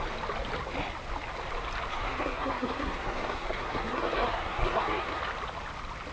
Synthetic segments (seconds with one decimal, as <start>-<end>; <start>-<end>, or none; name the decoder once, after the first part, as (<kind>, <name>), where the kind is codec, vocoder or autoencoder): 1.9-5.2 (codec, SNAC)